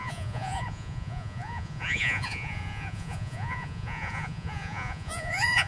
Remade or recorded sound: remade